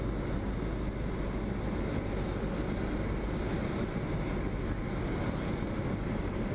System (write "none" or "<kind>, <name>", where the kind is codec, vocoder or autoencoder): none